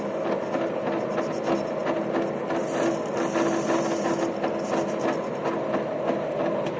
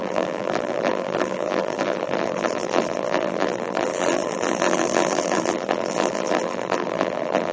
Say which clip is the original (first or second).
first